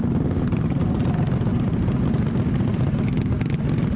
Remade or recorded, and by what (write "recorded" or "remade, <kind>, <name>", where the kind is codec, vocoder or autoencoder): recorded